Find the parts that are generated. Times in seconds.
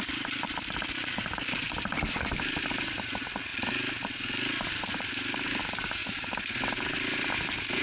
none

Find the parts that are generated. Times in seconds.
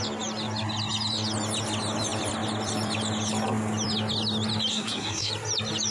4.7-5.3 (codec, SNAC)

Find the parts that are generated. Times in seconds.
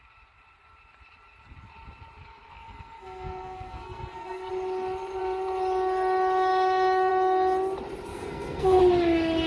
2.2-4.5 (codec, SNAC); 8.1-8.8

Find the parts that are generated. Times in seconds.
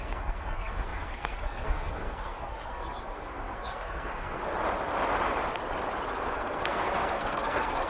0.0-4.4 (codec, SNAC); 6.1-7.9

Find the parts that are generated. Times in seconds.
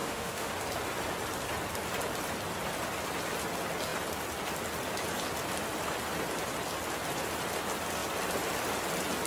0.0-0.5 (autoencoder, DAC-VAE)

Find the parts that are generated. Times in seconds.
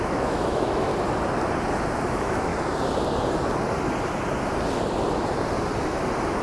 0.0-0.9 (autoencoder, DAC-VAE); 2.1-2.5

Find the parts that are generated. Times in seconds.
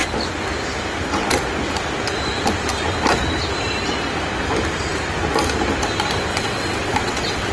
6.3-7.5 (vocoder, WaveNeXt)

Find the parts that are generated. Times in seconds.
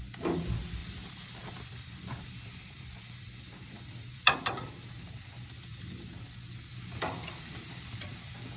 0.8-5.0 (vocoder, BigVGAN v2); 5.7-6.3